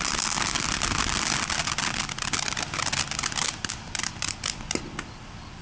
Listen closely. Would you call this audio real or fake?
real